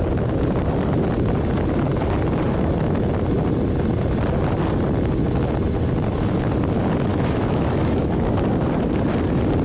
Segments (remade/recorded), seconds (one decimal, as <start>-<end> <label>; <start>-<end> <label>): 0.0-7.1 recorded; 7.1-8.2 remade; 8.2-9.6 recorded